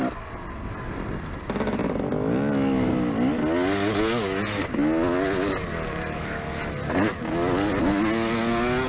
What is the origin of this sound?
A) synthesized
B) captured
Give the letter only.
B